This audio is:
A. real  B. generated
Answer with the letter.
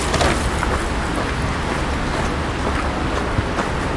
A